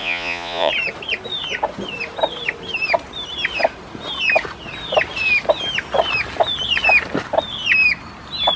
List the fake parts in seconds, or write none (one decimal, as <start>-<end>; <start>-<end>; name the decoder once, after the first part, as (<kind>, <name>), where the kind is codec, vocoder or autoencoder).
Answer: 0.0-0.7 (vocoder, Vocos)